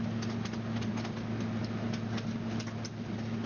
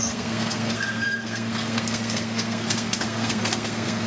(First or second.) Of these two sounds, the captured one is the first